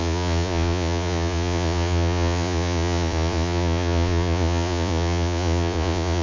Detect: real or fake fake